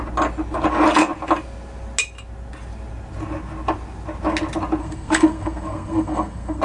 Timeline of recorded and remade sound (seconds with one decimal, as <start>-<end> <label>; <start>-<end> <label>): 0.0-4.8 recorded; 4.8-6.6 remade